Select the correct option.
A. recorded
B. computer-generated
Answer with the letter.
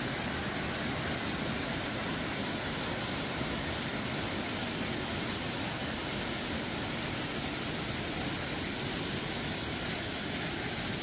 A